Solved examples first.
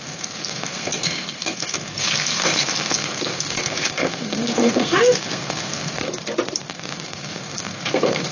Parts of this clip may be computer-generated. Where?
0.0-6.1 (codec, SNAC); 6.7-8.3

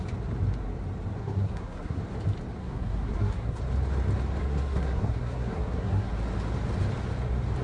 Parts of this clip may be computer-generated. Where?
1.2-2.0 (codec, SNAC); 2.6-3.6; 4.4-6.1

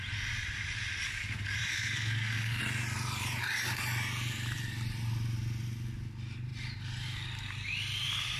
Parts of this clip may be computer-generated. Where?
1.7-2.6 (codec, SNAC)

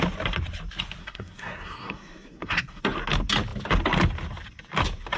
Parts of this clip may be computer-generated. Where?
1.0-2.8 (codec, SNAC)

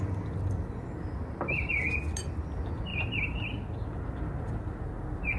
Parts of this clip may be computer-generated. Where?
none

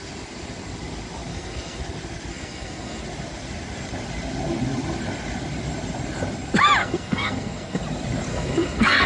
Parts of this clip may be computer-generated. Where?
1.3-1.8 (codec, SNAC); 2.3-3.0; 6.8-7.8; 8.3-9.1

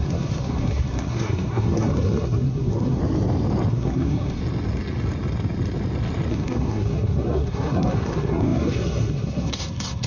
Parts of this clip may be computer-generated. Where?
0.0-3.0 (codec, SNAC); 3.7-4.4; 6.3-10.1